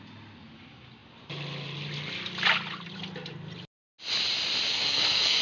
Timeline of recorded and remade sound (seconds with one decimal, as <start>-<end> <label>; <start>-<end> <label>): 0.0-4.7 recorded; 4.7-5.4 remade